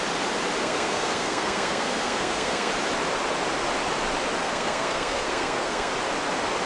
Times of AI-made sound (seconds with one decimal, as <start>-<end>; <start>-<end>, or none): 0.6-2.7; 4.4-5.9